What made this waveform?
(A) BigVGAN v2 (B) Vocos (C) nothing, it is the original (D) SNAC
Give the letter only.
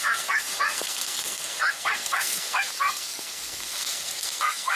D